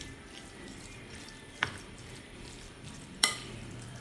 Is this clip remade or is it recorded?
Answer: remade